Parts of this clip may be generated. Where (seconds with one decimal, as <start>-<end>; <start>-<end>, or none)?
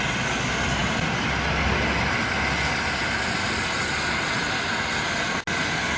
none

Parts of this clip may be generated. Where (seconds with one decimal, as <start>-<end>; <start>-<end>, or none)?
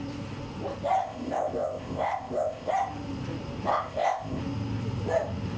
1.0-2.7; 3.7-4.4